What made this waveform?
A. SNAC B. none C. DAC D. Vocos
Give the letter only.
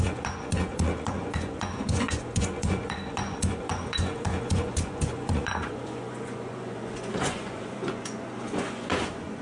D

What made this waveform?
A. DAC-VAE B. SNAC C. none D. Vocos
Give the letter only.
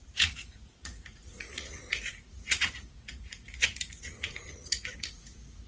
D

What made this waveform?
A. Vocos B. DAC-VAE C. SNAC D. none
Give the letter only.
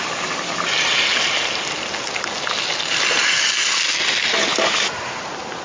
D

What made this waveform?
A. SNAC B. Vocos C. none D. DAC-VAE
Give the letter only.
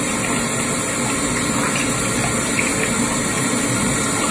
C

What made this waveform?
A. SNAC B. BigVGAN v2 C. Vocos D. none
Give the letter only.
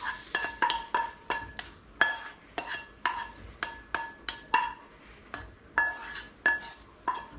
D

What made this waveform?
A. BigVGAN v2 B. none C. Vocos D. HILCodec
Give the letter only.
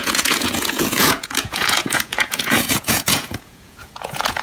C